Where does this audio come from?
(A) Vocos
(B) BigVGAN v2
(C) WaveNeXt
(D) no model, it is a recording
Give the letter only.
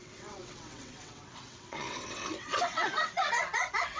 C